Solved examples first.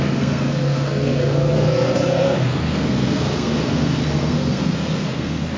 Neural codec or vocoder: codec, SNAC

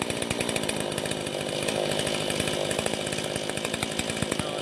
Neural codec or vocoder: none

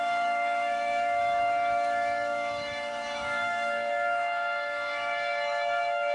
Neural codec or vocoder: autoencoder, DAC-VAE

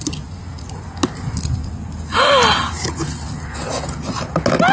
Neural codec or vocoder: none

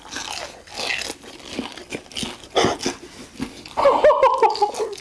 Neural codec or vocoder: none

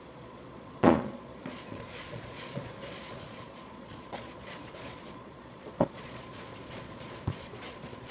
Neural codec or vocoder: vocoder, Vocos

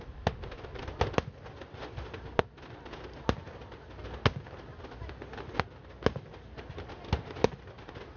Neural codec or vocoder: none